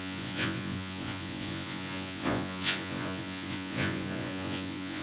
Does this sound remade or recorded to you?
remade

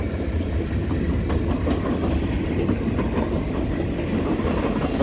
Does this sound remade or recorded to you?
recorded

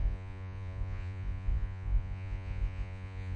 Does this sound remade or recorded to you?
remade